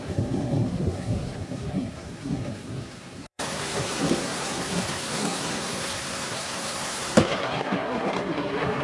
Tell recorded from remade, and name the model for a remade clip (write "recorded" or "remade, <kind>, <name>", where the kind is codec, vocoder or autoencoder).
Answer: remade, codec, SNAC